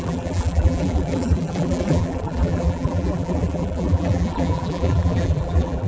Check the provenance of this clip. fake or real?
fake